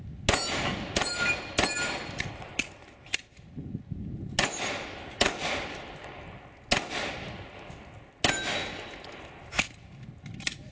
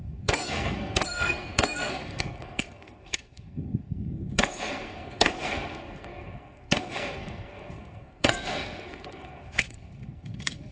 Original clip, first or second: first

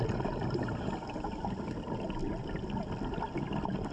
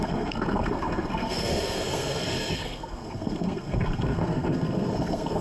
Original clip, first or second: first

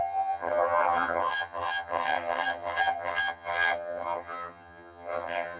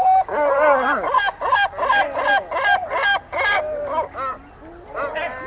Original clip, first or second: second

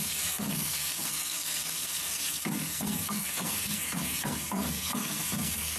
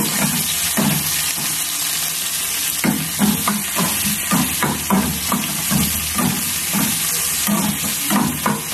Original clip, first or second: second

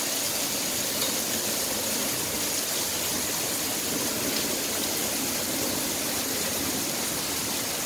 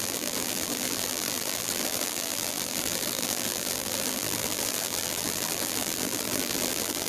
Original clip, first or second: first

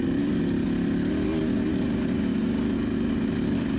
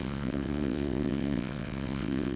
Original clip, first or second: first